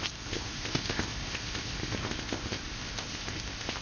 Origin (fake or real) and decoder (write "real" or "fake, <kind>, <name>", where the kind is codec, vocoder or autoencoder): fake, codec, ZipCodec